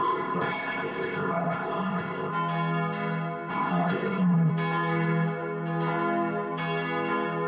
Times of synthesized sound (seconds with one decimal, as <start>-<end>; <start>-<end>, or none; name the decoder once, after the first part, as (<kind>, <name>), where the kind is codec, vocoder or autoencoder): 0.0-2.3 (codec, ZipCodec); 3.5-4.5